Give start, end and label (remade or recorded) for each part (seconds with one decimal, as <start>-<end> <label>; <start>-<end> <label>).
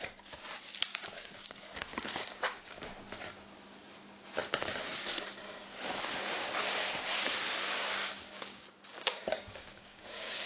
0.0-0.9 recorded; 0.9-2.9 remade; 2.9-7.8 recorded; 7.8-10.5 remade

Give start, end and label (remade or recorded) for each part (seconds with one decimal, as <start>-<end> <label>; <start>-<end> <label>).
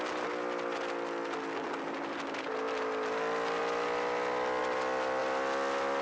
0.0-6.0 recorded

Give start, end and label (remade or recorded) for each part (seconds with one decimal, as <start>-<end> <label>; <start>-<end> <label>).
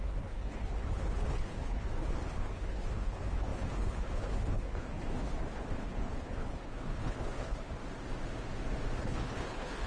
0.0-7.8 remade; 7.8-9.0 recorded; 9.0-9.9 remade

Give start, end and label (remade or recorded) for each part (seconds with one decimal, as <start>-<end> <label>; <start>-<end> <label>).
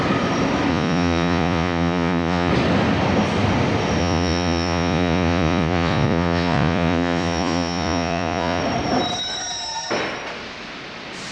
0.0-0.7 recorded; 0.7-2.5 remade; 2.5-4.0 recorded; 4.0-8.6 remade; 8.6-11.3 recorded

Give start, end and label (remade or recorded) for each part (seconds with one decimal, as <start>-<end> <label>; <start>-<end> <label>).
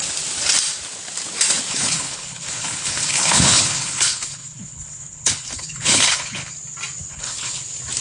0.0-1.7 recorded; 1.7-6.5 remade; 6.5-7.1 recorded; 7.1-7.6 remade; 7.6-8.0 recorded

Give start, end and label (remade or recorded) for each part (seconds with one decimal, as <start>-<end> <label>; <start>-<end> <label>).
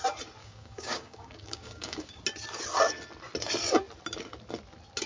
0.0-0.4 recorded; 0.4-2.2 remade; 2.2-5.1 recorded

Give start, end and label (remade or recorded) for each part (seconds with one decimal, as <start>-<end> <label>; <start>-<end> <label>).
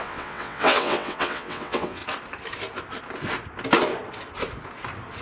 0.0-2.0 remade; 2.0-5.2 recorded